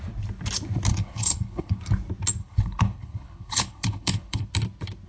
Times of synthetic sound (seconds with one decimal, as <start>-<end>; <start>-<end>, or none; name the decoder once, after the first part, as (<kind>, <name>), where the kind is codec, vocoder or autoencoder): 0.9-1.8 (codec, HILCodec); 2.4-4.5